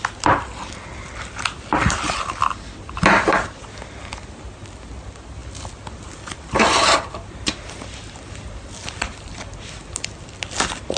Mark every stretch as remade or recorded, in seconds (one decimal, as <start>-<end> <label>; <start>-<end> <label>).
0.0-11.0 recorded